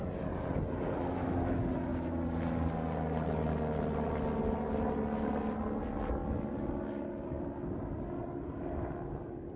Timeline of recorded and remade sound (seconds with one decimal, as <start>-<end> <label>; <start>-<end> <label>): 0.0-9.6 recorded